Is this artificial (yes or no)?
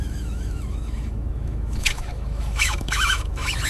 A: yes